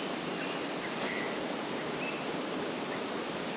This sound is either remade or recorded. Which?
recorded